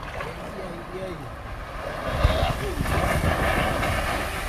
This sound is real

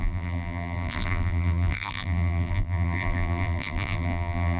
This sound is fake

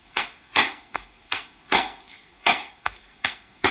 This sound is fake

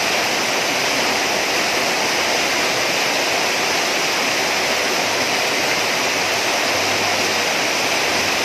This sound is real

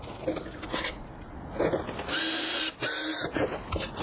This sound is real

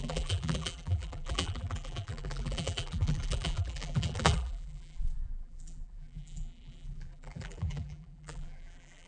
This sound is fake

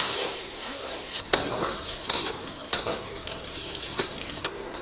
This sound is fake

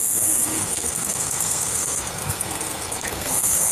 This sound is fake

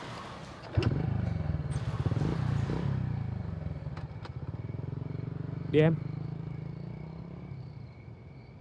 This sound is real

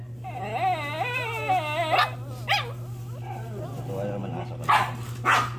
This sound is real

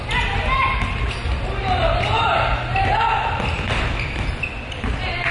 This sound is real